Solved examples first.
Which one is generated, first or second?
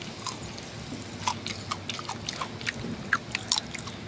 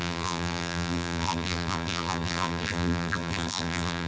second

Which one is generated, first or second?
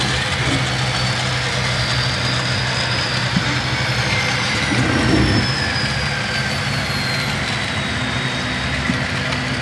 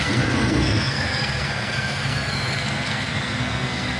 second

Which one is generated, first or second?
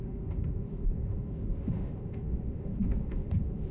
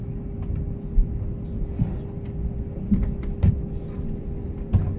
first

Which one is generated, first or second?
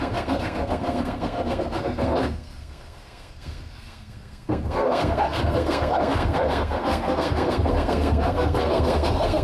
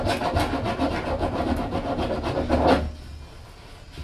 first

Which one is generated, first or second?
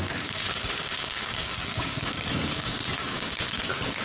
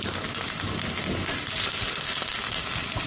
first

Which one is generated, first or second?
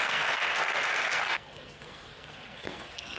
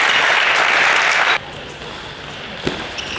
first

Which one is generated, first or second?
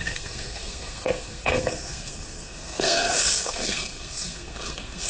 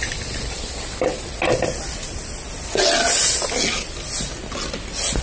first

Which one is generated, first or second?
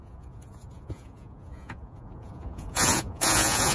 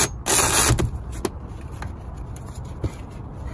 first